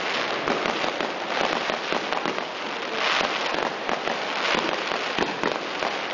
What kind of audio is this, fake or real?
real